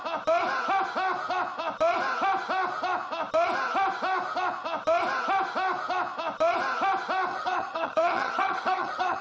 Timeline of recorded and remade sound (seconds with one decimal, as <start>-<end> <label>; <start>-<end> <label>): 0.0-7.3 recorded; 7.3-9.2 remade